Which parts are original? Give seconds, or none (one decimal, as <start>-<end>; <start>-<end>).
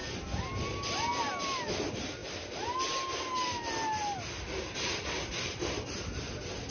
0.0-6.7